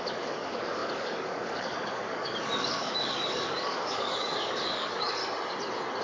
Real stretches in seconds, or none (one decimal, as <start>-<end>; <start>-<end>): 5.2-6.0